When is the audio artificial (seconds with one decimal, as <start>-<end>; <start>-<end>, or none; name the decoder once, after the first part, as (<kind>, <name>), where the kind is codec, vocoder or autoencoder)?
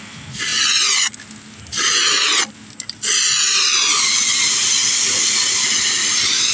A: none